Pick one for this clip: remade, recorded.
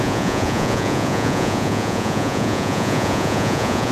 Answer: remade